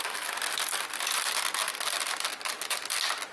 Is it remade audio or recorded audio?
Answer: recorded